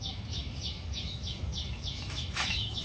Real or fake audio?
fake